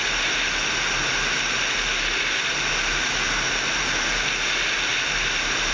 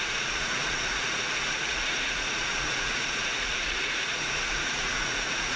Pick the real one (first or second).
first